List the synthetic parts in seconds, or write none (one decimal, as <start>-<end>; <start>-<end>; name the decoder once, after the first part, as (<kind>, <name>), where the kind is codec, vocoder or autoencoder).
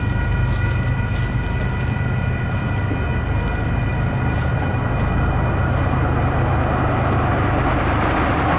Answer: 3.9-6.5 (vocoder, BigVGAN v2)